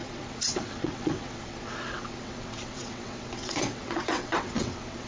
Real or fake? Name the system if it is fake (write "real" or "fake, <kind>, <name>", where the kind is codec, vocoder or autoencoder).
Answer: fake, vocoder, WaveNeXt